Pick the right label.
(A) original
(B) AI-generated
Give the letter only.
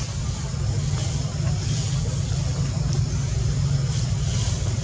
A